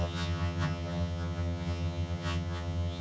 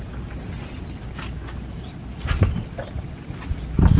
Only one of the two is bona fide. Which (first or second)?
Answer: second